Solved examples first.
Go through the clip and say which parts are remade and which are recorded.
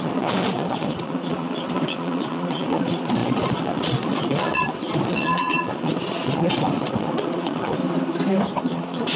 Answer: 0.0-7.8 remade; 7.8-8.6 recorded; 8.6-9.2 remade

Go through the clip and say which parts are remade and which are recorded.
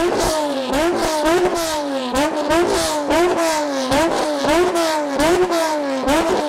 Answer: 0.0-6.5 remade